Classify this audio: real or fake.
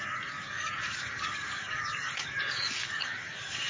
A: fake